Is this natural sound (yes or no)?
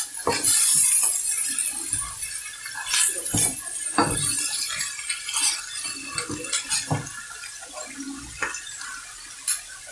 yes